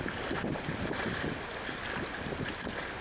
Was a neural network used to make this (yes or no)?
no